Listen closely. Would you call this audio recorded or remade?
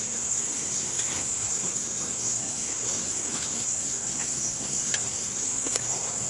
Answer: remade